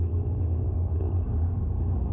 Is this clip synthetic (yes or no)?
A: no